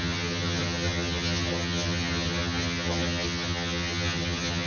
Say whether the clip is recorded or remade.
remade